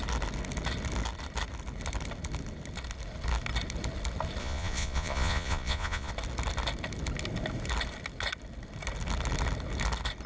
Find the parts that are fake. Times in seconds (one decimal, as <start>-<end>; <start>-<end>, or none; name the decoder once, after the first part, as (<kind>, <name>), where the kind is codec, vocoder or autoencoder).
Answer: 4.4-6.1 (vocoder, Vocos)